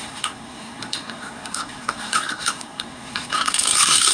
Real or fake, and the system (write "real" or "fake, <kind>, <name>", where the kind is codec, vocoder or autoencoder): fake, codec, SNAC